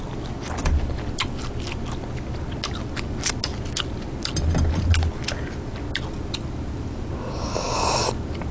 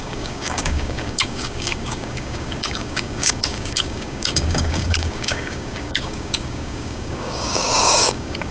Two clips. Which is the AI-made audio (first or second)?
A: second